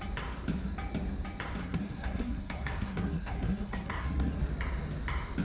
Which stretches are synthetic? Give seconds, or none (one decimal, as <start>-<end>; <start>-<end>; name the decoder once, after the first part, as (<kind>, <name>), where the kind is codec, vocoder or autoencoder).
1.6-4.4 (codec, SNAC)